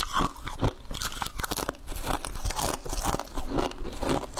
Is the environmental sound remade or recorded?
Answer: recorded